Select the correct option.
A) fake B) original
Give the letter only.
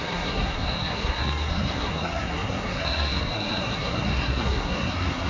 A